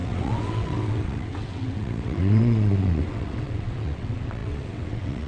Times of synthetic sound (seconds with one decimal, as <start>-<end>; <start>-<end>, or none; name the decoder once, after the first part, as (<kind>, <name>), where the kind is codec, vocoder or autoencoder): 0.0-5.3 (vocoder, WaveNeXt)